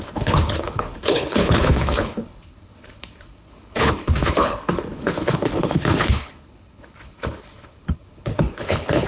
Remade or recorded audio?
remade